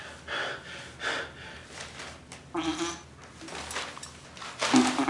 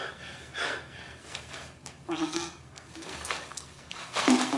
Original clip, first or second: first